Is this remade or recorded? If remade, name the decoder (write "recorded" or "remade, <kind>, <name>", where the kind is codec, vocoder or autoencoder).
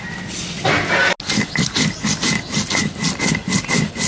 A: recorded